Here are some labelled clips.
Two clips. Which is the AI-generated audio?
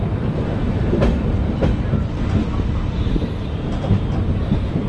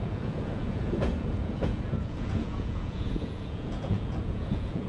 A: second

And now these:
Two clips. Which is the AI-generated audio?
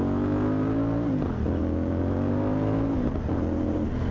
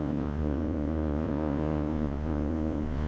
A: second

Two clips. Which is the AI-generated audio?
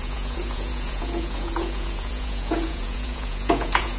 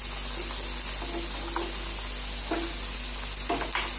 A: first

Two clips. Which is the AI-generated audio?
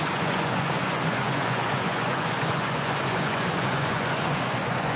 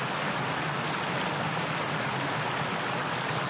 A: first